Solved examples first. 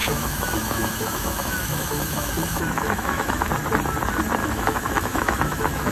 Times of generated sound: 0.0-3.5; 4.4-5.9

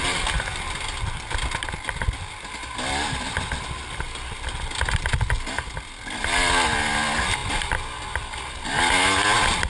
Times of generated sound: none

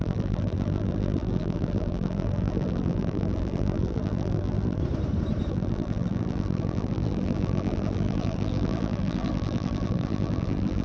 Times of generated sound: 0.0-4.8; 5.5-10.8

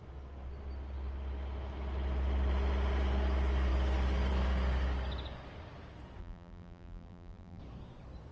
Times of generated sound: 6.2-7.6

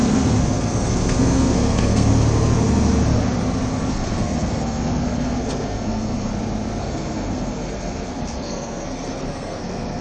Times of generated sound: 0.0-2.1; 3.9-6.3; 6.8-10.0

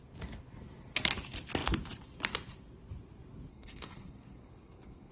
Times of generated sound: 3.5-5.1

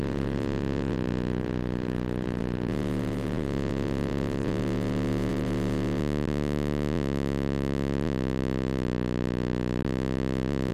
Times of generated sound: 0.0-6.0